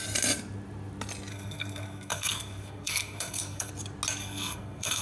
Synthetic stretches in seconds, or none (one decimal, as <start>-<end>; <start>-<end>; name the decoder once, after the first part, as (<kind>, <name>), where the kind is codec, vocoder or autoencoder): 1.3-3.7 (codec, SNAC); 4.2-5.0